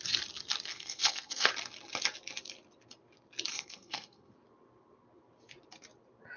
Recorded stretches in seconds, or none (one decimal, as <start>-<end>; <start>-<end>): 0.0-0.7; 1.5-3.5; 4.3-6.4